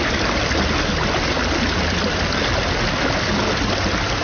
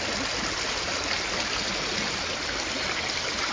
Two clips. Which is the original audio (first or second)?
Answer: second